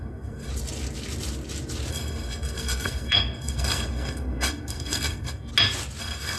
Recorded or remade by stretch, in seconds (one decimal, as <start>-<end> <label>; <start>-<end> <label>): 0.0-0.5 remade; 0.5-1.9 recorded; 1.9-5.5 remade; 5.5-6.0 recorded; 6.0-6.4 remade